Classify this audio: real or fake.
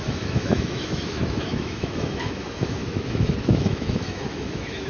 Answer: fake